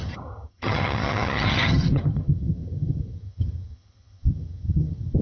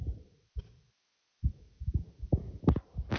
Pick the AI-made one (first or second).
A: first